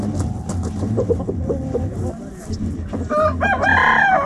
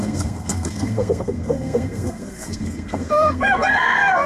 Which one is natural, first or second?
first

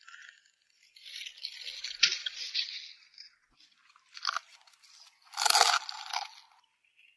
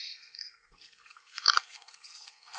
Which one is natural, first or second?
first